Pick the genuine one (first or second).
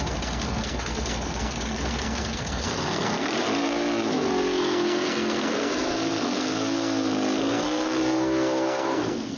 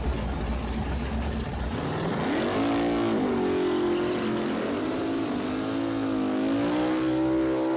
second